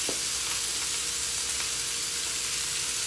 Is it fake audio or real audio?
real